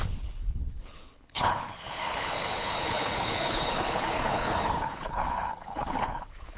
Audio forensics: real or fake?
fake